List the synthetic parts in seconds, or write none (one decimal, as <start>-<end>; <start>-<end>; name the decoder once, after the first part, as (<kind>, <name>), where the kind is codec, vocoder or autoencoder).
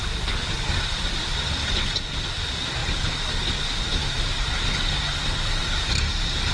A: none